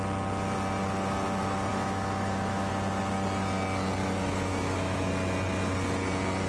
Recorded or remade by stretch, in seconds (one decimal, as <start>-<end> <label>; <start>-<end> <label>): 0.0-1.7 recorded; 1.7-2.7 remade; 2.7-4.0 recorded; 4.0-5.1 remade; 5.1-6.5 recorded